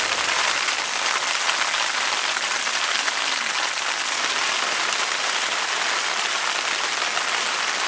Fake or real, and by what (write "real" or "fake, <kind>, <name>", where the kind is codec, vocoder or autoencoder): real